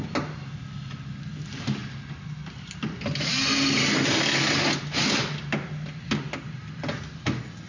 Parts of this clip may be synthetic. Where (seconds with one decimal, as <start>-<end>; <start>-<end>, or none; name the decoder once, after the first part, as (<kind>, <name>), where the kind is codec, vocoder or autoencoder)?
none